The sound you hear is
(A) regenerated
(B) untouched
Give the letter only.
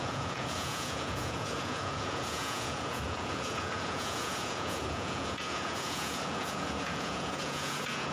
A